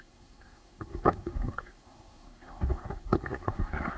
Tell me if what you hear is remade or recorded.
remade